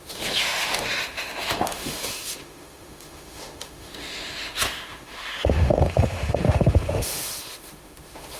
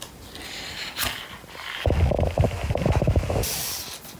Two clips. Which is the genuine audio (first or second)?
second